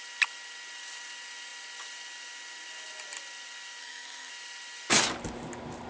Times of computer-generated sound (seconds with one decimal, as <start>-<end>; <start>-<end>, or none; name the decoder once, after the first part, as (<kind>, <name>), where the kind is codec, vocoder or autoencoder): 3.8-4.3 (codec, SNAC)